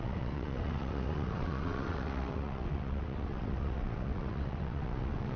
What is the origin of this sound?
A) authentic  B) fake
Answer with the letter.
B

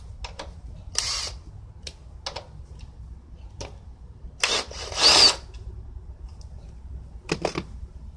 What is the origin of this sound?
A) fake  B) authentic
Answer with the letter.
B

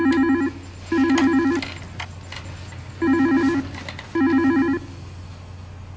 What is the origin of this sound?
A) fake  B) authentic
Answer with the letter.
B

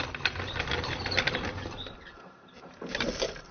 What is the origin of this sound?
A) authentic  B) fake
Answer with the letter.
A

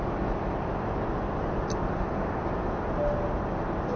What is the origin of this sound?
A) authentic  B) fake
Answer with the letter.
A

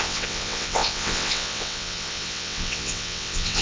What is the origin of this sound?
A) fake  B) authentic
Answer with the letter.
A